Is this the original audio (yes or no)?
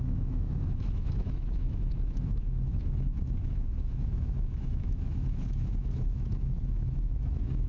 no